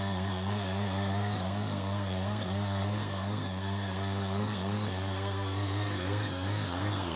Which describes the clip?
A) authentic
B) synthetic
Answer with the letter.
B